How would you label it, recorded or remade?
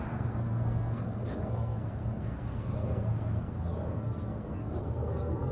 remade